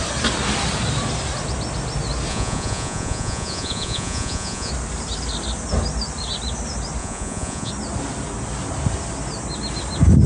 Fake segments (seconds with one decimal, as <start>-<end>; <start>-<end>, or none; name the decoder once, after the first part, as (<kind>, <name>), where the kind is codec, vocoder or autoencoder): 2.3-4.7 (vocoder, Vocos); 7.0-7.7